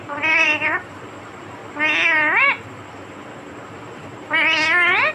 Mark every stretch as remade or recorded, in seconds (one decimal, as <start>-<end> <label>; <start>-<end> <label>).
0.0-1.6 remade; 1.6-5.1 recorded